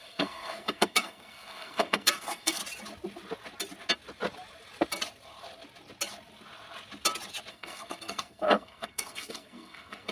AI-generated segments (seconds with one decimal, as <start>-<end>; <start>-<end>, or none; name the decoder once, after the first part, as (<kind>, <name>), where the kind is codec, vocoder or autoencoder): 0.0-2.6 (codec, SNAC); 7.5-10.1

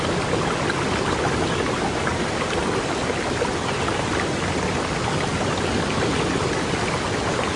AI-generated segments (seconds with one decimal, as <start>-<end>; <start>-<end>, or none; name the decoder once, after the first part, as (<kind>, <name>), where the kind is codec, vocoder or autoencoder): 2.1-2.6 (vocoder, BigVGAN v2)

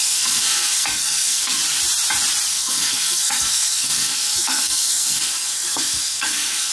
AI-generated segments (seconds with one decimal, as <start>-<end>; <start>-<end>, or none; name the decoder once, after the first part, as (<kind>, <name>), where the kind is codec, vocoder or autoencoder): 0.0-1.6 (codec, SNAC); 2.5-6.7

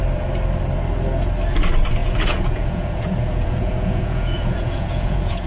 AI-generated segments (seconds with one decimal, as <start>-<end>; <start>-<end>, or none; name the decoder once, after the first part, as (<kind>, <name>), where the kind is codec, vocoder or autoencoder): 2.0-5.5 (vocoder, Vocos)

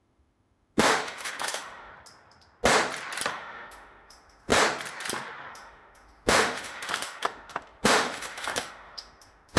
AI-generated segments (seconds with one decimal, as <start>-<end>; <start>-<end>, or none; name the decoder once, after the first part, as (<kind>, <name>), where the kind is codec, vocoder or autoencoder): 0.0-1.9 (autoencoder, DAC-VAE); 3.3-4.5; 5.5-9.6